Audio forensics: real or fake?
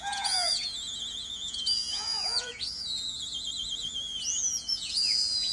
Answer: fake